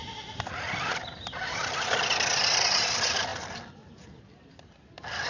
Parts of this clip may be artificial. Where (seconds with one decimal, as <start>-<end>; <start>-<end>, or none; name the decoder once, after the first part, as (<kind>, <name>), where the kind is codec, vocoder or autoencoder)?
none